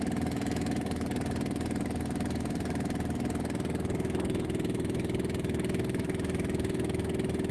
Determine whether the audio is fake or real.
fake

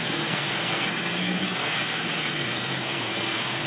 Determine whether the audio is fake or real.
fake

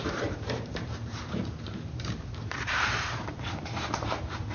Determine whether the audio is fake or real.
fake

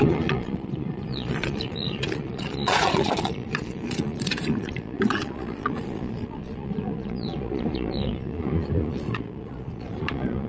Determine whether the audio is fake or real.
fake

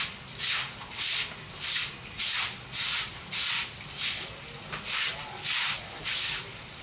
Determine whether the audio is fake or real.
real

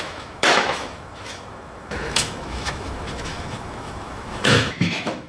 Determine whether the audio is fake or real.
fake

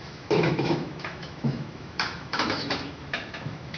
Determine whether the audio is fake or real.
fake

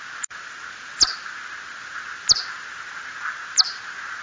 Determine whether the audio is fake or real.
real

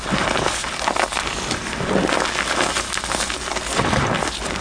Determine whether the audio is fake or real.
real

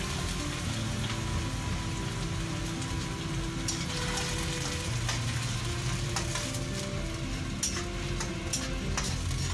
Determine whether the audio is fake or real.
real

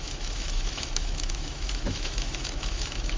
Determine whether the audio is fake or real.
fake